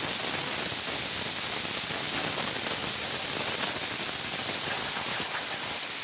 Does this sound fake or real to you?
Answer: real